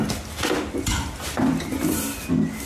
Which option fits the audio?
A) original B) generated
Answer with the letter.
A